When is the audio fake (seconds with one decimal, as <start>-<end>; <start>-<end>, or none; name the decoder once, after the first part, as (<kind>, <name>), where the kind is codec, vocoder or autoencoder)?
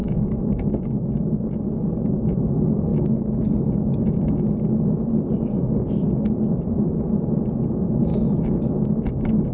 0.0-1.1 (autoencoder, DAC-VAE); 8.1-8.6